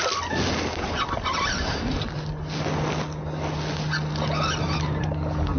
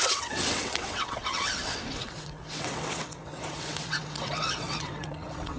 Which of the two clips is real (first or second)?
first